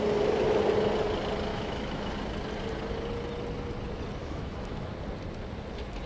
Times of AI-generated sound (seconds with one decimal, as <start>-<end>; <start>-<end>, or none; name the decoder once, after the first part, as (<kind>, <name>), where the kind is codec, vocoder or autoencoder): 1.5-2.1 (autoencoder, DAC-VAE); 4.2-4.9